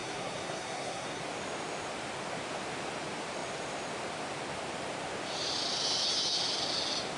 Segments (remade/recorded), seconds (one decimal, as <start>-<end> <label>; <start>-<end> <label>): 0.0-1.2 remade; 1.2-7.2 recorded